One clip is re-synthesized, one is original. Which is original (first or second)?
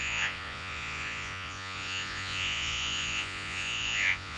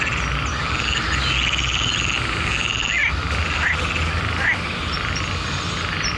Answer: second